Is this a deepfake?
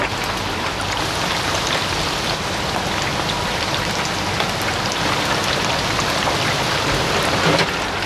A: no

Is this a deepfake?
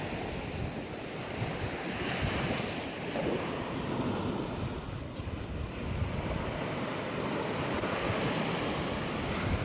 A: no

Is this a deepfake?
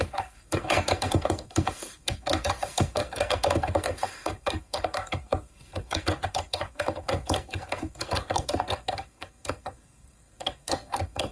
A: yes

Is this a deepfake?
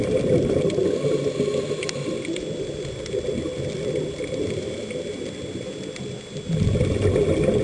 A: no